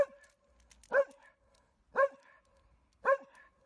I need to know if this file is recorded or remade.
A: recorded